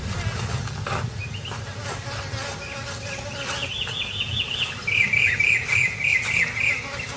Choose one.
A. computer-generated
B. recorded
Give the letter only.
B